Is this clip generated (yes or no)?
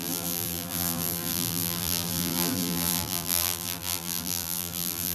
yes